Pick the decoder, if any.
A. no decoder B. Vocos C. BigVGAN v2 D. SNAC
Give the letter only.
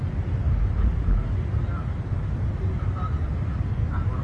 A